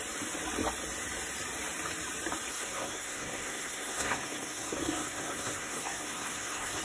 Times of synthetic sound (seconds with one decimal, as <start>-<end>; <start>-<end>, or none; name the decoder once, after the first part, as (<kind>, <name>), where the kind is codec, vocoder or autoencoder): 2.5-6.8 (codec, SNAC)